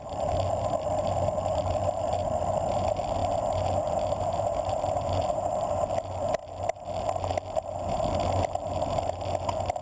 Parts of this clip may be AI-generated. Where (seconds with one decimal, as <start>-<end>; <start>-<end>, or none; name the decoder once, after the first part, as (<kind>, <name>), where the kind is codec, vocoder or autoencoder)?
0.0-6.4 (vocoder, BigVGAN v2); 9.4-9.8